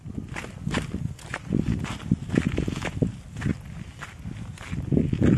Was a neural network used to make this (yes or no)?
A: no